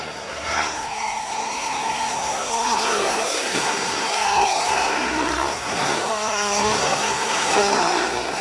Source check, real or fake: fake